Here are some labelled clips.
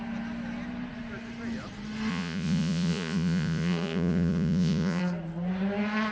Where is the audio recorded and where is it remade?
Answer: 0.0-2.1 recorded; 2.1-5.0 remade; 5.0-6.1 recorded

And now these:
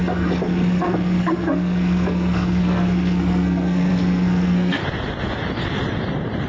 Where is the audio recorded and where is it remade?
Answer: 0.0-4.8 remade; 4.8-6.5 recorded

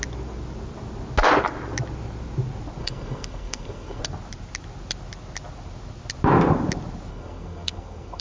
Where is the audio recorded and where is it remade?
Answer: 0.0-2.8 recorded; 2.8-4.0 remade; 4.0-7.1 recorded; 7.1-8.2 remade

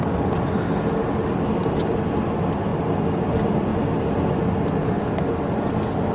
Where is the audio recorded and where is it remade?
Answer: 0.0-6.1 recorded